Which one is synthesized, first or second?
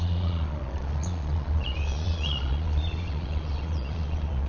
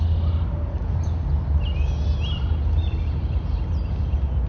first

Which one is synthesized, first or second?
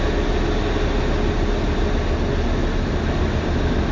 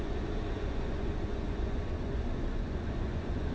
second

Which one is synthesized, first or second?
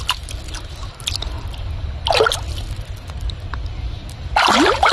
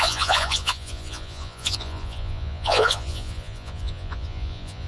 second